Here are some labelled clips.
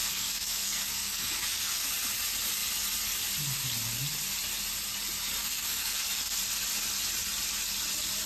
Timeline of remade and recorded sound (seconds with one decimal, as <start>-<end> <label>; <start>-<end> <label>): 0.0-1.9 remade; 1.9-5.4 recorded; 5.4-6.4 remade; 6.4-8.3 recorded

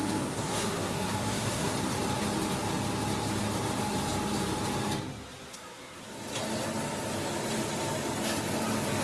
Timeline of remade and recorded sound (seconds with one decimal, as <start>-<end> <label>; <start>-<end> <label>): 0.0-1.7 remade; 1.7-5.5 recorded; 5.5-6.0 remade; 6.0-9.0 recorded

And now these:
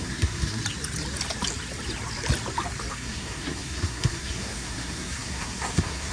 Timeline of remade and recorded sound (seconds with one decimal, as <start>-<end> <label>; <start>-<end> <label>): 0.0-0.6 remade; 0.6-2.9 recorded; 2.9-6.1 remade